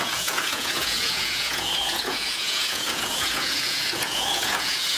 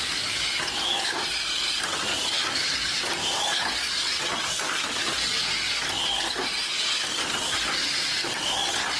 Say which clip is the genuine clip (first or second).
second